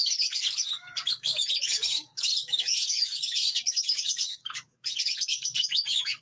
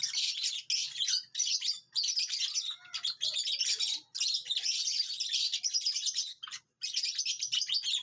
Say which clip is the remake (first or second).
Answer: first